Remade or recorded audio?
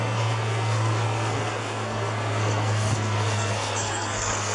remade